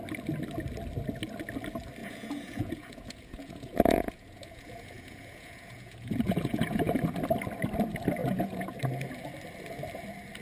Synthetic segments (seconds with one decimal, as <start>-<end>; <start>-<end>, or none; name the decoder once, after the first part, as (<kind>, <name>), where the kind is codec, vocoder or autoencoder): 2.0-7.2 (vocoder, Vocos); 8.2-8.8